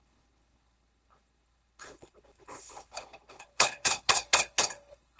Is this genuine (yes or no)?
no